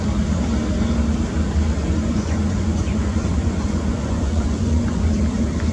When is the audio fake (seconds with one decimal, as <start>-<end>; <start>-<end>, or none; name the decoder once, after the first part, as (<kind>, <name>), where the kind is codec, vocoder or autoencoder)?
1.8-5.2 (vocoder, Vocos)